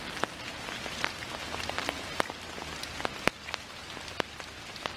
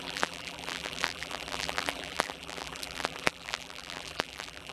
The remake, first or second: second